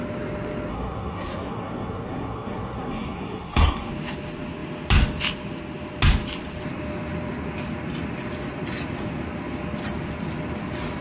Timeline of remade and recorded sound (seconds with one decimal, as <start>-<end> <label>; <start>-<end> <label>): 0.0-0.7 recorded; 0.7-3.9 remade; 3.9-11.0 recorded